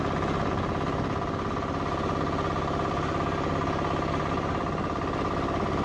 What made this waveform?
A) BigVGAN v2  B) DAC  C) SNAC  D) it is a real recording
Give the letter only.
D